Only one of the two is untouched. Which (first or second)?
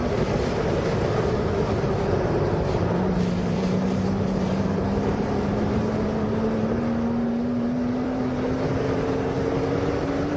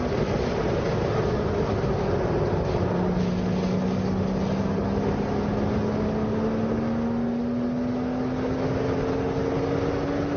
second